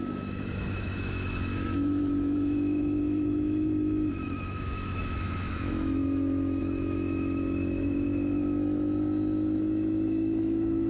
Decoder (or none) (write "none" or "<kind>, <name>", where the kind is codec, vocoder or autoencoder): autoencoder, DAC-VAE